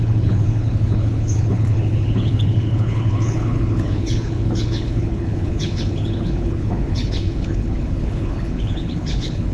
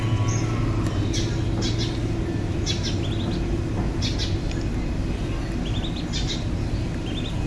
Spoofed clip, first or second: first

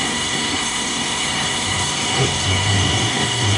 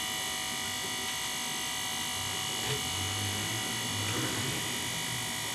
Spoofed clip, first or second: first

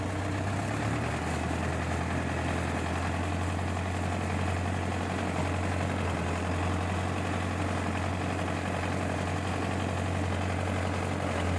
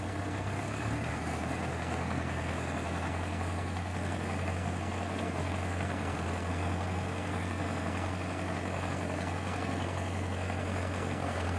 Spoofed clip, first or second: second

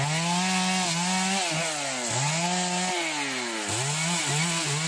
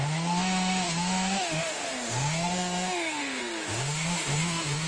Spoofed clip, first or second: second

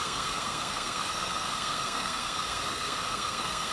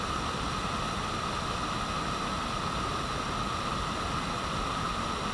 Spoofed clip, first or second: first